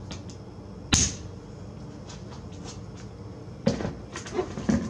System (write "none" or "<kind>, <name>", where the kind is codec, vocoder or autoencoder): none